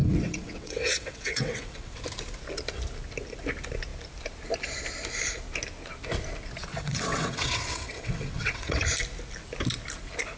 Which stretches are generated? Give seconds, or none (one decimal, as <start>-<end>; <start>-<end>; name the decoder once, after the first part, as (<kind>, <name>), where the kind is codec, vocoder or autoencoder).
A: 0.0-2.0 (vocoder, WaveNeXt); 6.7-8.8